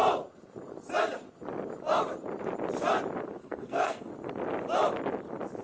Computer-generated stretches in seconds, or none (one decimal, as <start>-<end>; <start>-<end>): 3.4-4.1